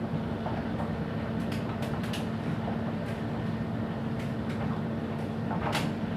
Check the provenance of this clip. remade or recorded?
recorded